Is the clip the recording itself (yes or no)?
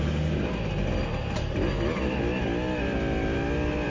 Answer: yes